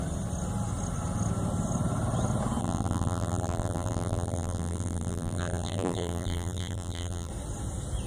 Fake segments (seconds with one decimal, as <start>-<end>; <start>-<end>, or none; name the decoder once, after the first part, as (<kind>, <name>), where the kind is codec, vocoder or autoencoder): 2.6-7.3 (vocoder, BigVGAN v2)